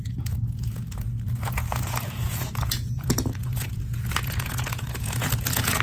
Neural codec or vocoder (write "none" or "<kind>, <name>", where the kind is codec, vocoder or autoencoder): vocoder, Vocos